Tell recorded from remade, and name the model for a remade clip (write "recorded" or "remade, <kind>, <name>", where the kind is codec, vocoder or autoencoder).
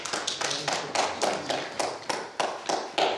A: recorded